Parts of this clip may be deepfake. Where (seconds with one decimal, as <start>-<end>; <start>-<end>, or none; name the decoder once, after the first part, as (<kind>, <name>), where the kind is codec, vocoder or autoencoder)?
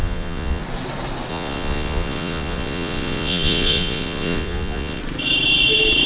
0.0-0.6 (vocoder, Vocos); 1.3-5.0